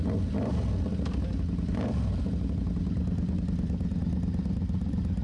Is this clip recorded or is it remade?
recorded